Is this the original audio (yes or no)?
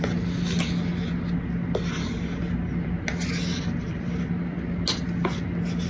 yes